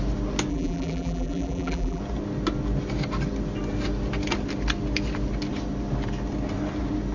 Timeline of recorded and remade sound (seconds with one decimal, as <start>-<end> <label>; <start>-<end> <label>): 0.0-0.5 recorded; 0.5-2.0 remade; 2.0-7.1 recorded